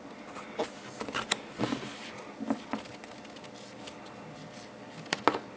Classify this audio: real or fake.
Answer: real